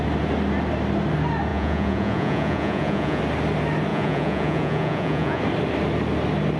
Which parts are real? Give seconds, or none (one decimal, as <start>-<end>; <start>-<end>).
0.0-1.5; 3.2-3.9; 5.4-6.6